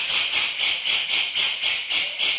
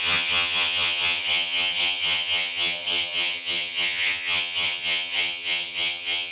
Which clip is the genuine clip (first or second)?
first